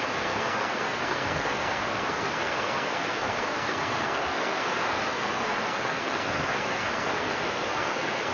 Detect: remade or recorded remade